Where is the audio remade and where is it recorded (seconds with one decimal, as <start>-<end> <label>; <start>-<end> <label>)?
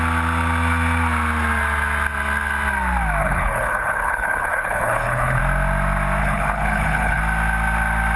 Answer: 0.0-3.2 recorded; 3.2-5.4 remade; 5.4-6.2 recorded; 6.2-7.2 remade; 7.2-8.2 recorded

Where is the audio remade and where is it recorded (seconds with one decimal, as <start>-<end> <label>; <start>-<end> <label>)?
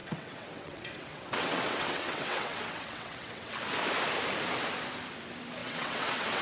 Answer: 0.0-3.5 remade; 3.5-5.6 recorded; 5.6-6.4 remade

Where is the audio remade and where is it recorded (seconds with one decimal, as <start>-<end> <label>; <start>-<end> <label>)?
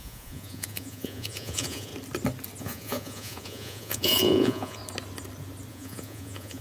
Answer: 0.0-1.9 remade; 1.9-2.6 recorded; 2.6-4.8 remade; 4.8-5.7 recorded; 5.7-6.6 remade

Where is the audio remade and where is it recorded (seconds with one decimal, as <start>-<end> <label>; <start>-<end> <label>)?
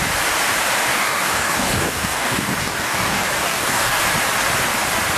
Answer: 0.0-0.9 recorded; 0.9-4.0 remade; 4.0-5.2 recorded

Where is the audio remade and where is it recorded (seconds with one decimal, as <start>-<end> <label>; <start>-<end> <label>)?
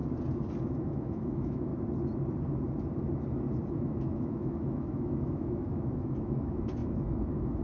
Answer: 0.0-0.6 recorded; 0.6-1.7 remade; 1.7-3.7 recorded; 3.7-7.6 remade